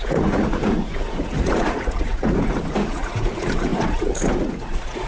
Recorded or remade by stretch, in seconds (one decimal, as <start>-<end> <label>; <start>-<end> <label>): 0.0-5.1 remade